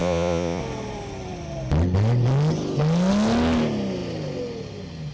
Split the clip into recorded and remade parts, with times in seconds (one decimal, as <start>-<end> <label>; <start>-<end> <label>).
0.0-0.6 remade; 0.6-5.1 recorded